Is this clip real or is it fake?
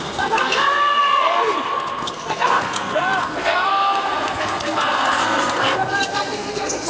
fake